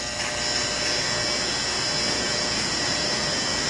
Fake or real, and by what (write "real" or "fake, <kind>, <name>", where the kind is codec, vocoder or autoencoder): real